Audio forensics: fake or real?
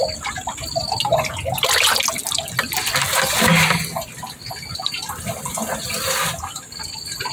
real